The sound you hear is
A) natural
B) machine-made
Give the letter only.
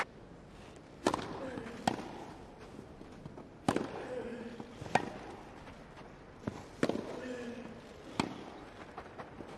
A